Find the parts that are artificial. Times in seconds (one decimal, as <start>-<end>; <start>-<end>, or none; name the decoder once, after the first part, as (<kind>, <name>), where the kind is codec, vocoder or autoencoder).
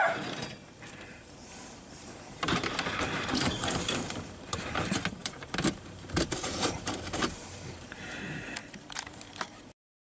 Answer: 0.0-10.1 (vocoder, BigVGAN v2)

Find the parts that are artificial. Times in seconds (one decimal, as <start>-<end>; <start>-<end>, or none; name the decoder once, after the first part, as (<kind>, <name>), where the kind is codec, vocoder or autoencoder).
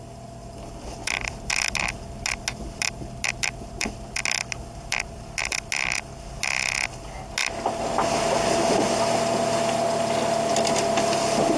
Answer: none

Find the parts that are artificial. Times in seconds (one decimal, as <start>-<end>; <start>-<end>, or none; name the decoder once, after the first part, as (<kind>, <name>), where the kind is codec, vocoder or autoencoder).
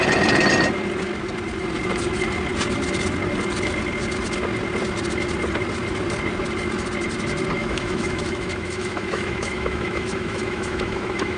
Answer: 7.6-11.4 (autoencoder, DAC-VAE)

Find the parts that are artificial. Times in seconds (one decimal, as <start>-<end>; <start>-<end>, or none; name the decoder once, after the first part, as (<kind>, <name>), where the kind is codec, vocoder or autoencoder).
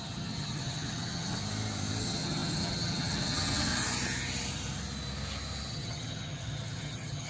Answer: 0.0-1.4 (vocoder, HiFi-GAN); 2.0-3.7; 5.7-7.3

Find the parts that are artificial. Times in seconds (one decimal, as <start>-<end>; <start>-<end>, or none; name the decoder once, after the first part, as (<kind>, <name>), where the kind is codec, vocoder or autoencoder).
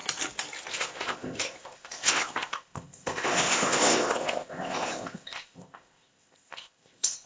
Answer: 0.7-7.3 (codec, ZipCodec)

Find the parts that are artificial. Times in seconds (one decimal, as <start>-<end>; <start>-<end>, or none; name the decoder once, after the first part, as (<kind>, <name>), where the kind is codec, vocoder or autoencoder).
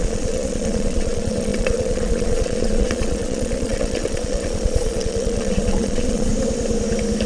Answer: 0.0-6.3 (vocoder, Vocos)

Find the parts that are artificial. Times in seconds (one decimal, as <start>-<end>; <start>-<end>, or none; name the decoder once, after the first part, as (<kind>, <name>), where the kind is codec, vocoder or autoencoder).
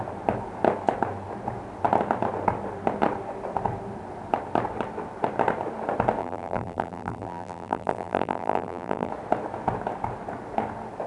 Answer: 6.2-9.1 (vocoder, BigVGAN v2)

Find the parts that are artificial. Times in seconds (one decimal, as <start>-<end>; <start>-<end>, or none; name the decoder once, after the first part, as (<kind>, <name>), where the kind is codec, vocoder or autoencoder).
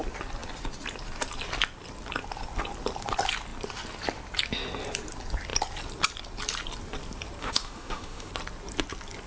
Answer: 7.4-8.3 (autoencoder, DAC-VAE)